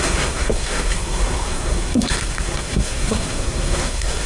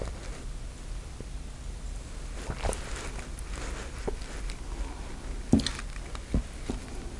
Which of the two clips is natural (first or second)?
second